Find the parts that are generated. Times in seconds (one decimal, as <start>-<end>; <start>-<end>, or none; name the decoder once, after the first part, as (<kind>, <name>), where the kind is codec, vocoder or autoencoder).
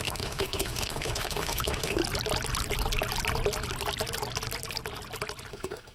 0.0-2.0 (autoencoder, DAC-VAE); 5.5-5.9